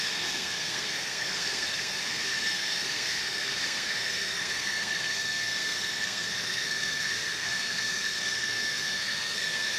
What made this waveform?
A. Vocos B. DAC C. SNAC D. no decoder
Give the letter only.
C